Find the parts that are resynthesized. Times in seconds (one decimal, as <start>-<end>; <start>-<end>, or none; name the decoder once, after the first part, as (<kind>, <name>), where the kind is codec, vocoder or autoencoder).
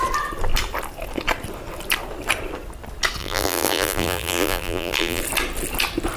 3.2-5.2 (vocoder, BigVGAN v2)